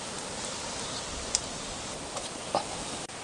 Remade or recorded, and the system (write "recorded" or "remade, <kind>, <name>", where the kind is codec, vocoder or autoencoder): recorded